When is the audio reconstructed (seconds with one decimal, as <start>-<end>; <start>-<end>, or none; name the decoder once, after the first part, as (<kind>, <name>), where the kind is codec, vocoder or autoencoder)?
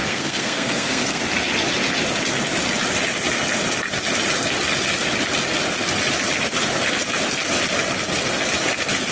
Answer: 0.0-1.2 (codec, SNAC)